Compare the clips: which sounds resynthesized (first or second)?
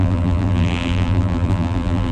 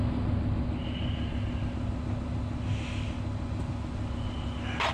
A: first